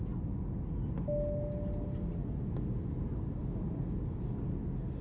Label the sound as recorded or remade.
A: recorded